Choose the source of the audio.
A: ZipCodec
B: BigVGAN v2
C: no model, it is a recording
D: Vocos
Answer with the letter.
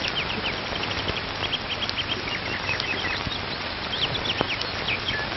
C